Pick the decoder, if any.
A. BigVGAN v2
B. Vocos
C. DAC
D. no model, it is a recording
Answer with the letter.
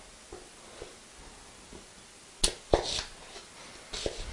D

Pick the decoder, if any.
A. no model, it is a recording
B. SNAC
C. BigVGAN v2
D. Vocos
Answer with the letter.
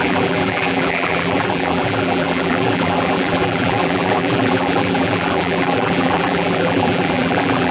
C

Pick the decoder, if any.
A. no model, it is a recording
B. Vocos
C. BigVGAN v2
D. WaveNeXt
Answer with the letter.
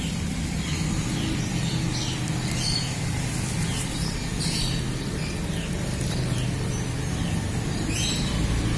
C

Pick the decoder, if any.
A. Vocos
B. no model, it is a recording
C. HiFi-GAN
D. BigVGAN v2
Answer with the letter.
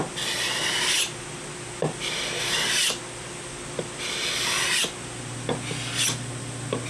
B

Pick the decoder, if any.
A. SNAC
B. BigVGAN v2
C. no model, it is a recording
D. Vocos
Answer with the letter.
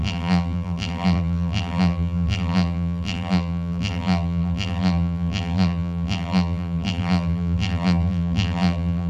B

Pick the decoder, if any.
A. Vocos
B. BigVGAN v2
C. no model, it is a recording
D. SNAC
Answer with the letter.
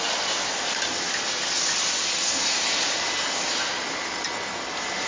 B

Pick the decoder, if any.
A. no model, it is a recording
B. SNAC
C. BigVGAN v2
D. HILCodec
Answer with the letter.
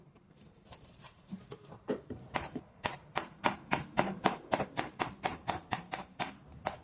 C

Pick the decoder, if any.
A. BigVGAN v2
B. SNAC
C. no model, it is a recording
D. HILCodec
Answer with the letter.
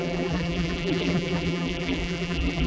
A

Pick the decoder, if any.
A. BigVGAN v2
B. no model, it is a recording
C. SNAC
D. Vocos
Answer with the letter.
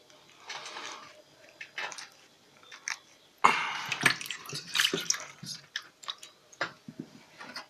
B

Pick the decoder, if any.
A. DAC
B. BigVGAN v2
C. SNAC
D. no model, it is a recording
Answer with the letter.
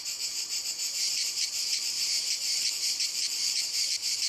B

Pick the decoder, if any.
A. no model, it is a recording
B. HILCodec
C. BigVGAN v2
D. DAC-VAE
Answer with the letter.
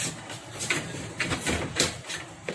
C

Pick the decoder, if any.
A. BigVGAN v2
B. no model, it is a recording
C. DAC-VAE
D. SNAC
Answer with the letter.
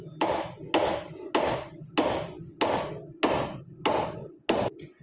B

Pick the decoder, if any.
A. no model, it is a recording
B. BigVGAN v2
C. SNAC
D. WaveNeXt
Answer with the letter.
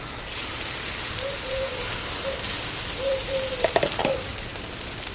B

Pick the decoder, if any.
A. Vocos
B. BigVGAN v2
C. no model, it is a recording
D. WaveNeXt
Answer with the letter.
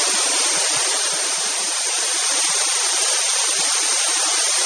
C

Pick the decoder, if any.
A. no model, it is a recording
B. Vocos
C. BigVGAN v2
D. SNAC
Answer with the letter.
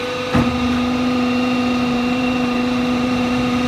C